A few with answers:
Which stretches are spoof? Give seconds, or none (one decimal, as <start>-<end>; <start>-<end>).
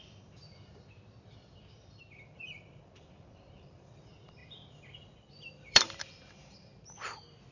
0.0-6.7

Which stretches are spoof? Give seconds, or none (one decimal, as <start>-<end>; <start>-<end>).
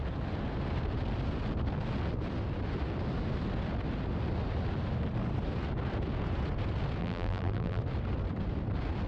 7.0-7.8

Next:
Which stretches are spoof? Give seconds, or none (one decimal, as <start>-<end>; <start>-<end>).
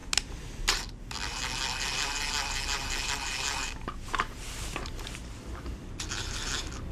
4.1-6.9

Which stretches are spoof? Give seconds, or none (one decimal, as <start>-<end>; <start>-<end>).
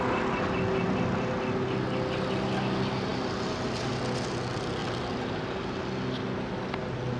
none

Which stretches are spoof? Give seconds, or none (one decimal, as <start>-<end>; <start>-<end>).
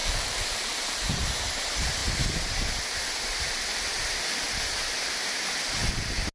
0.0-1.3